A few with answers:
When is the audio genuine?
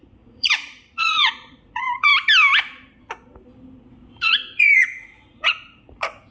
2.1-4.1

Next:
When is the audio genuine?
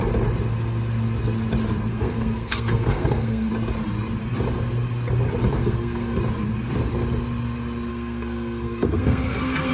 0.0-1.9; 3.5-5.6; 6.2-7.9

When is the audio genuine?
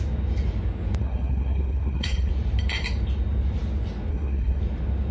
0.0-1.0; 2.3-4.1; 4.6-5.1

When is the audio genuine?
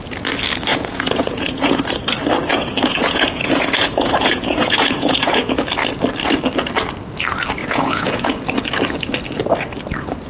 0.0-0.7; 1.9-2.5; 5.6-7.6; 8.3-10.3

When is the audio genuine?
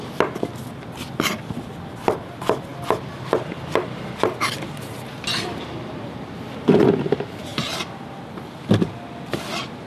0.0-9.9